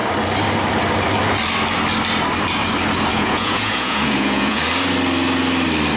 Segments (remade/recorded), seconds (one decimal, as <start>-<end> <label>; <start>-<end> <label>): 0.0-3.1 recorded; 3.1-4.6 remade; 4.6-6.0 recorded